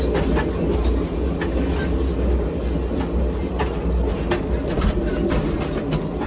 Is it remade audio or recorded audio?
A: recorded